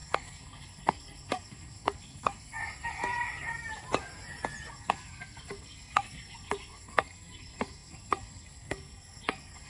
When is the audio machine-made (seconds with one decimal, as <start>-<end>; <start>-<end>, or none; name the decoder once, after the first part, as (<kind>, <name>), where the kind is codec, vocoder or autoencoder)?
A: 0.0-2.6 (codec, SNAC); 4.7-9.7